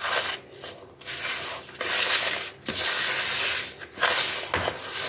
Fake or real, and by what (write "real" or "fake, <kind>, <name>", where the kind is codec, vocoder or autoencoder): real